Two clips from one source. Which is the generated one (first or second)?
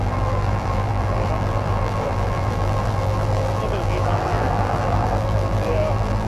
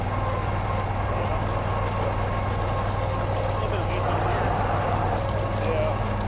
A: first